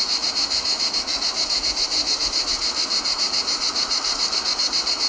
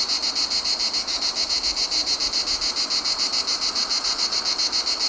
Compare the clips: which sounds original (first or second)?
second